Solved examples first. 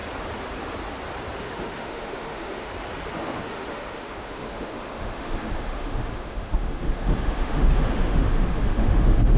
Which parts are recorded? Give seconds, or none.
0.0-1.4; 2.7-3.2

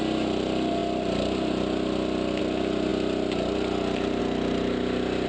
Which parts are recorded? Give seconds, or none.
0.0-5.3

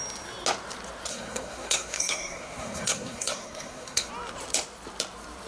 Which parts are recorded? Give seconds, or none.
0.0-1.1; 4.1-5.5

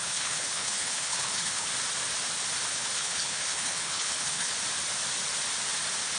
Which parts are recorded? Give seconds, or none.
1.7-2.7; 4.5-6.2

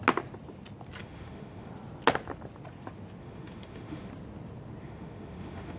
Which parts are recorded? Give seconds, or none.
0.0-1.0; 1.7-3.2; 4.1-4.8

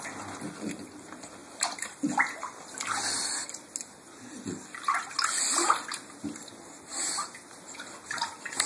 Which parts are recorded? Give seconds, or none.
0.0-8.7